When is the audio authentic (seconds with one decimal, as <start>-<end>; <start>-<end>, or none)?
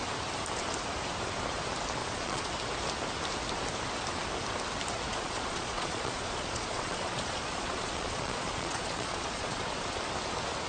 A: 0.0-2.0; 2.5-5.1; 9.6-10.7